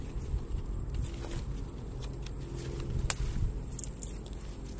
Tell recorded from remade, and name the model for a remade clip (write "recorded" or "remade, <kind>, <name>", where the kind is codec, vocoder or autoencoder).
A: recorded